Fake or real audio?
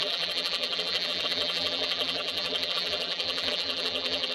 fake